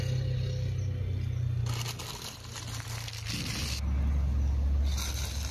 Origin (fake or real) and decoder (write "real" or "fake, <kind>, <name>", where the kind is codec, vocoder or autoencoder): real